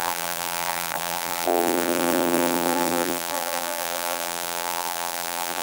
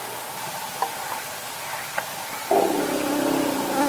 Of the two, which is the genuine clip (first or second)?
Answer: second